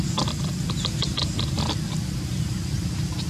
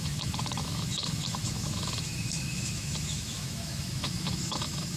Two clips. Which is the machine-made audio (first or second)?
second